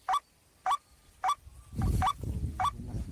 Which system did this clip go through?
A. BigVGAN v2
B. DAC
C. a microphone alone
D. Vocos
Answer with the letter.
A